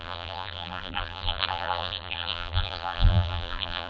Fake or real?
fake